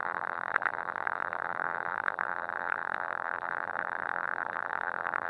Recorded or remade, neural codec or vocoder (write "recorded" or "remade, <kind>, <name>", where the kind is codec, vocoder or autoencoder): remade, vocoder, BigVGAN v2